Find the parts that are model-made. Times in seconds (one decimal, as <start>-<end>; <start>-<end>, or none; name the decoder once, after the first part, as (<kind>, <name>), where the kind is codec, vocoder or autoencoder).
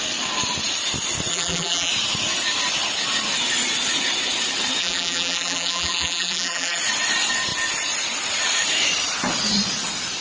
1.3-1.9 (vocoder, BigVGAN v2); 4.8-6.8